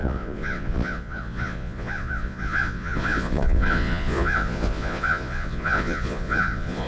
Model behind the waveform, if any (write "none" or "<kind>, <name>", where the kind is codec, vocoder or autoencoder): vocoder, Vocos